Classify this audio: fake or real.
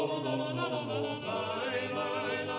real